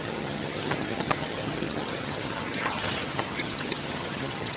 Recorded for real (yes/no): no